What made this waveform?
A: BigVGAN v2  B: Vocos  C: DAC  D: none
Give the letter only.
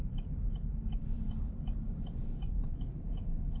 A